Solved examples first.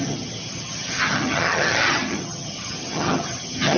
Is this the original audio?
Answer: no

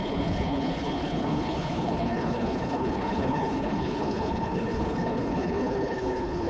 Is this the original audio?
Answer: no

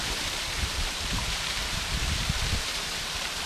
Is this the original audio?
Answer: no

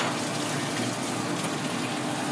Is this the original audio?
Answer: yes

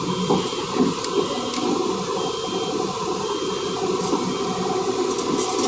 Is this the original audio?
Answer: yes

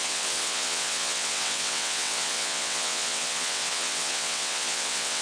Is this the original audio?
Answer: no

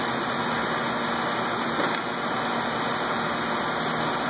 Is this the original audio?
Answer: yes